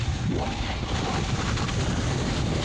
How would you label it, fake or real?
real